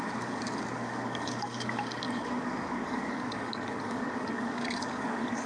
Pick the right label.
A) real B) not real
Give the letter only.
B